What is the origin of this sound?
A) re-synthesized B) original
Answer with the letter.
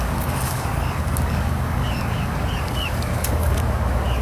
A